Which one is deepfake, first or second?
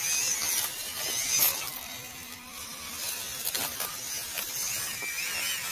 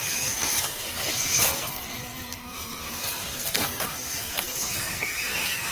second